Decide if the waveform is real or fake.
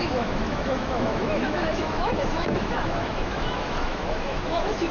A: fake